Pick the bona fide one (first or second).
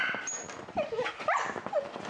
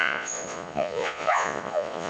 first